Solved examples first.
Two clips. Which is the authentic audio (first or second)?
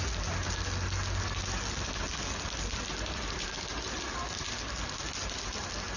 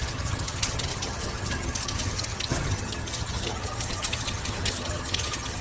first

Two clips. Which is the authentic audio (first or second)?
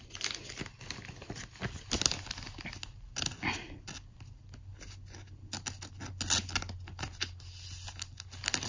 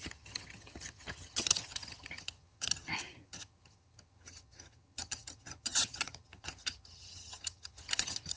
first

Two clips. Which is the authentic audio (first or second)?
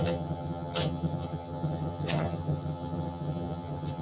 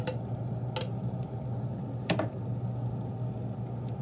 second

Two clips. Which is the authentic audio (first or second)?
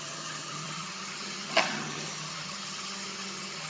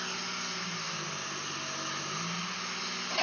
second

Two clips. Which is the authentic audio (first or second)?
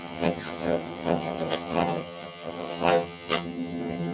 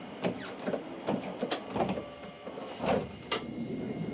second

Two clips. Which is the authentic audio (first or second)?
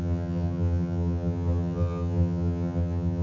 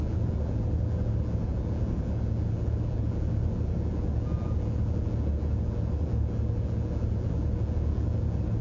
second